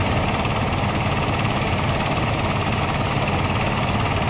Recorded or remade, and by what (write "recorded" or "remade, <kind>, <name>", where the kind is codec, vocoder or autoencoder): recorded